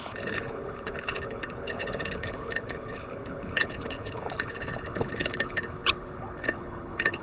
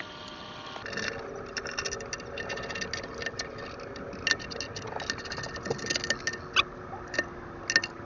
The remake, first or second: first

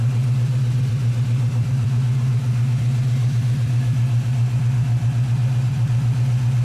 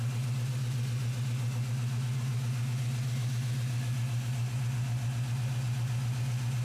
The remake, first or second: first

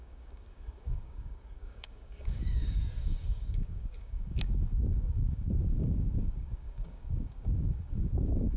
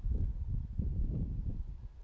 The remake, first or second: first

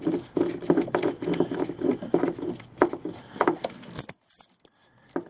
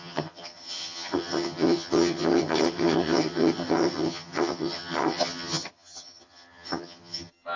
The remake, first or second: second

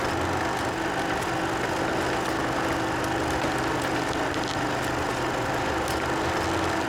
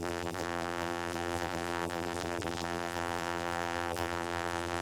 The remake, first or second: second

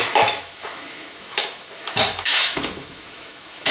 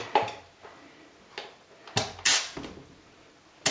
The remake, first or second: first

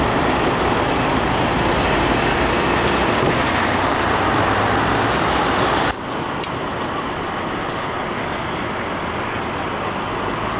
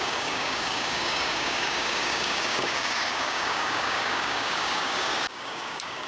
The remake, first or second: second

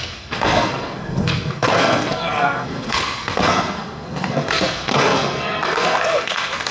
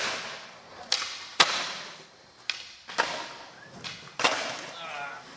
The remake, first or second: first